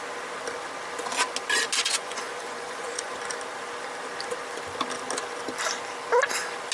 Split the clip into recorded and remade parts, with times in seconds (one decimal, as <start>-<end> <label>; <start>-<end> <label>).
0.0-1.8 recorded; 1.8-3.1 remade; 3.1-6.7 recorded